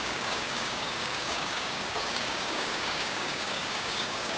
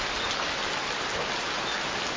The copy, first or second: first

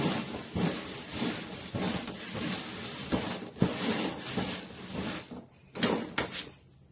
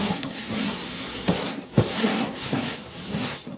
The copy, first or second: second